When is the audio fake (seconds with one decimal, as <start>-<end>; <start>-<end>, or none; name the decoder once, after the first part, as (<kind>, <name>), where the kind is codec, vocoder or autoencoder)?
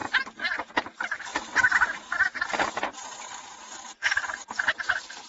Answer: 1.3-4.2 (vocoder, BigVGAN v2)